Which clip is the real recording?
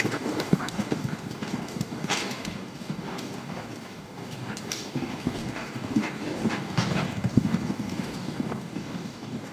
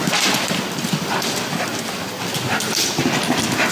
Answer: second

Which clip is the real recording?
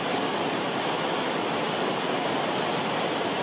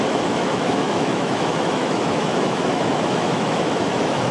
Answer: first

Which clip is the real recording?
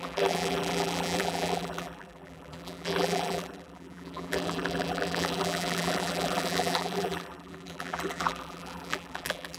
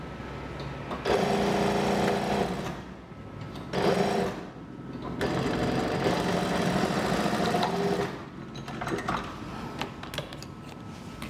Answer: second